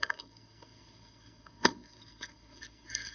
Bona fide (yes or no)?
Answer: no